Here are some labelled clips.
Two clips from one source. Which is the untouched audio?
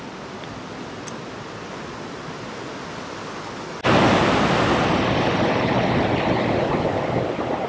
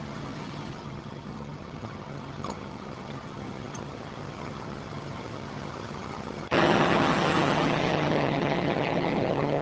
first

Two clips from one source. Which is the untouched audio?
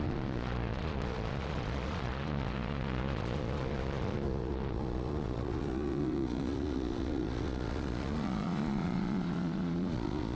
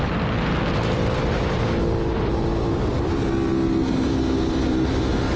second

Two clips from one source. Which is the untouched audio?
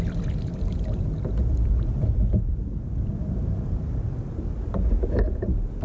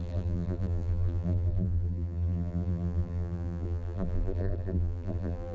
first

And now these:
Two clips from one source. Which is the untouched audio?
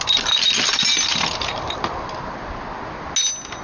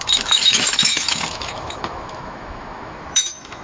first